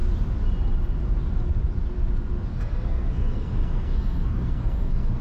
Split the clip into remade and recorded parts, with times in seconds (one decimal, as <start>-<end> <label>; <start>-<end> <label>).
0.0-2.5 recorded; 2.5-5.2 remade